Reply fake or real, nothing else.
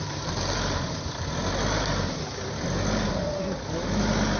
real